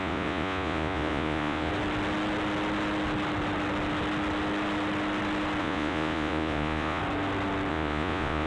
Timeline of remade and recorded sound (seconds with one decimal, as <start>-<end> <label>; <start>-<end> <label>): 0.0-1.7 remade; 1.7-5.6 recorded; 5.6-7.0 remade; 7.0-7.7 recorded; 7.7-8.5 remade